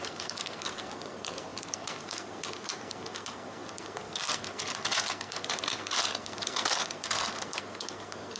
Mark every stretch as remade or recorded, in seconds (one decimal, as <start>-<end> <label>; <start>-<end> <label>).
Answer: 0.0-8.4 remade